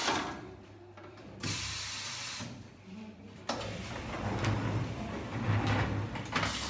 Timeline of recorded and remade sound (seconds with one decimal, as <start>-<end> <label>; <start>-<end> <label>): 0.0-4.0 remade; 4.0-6.7 recorded